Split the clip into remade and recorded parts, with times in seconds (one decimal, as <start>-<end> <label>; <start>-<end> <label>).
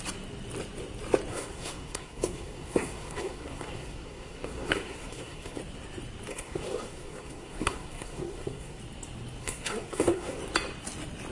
0.0-1.3 recorded; 1.3-5.6 remade; 5.6-6.3 recorded; 6.3-8.8 remade; 8.8-9.4 recorded; 9.4-10.4 remade; 10.4-11.3 recorded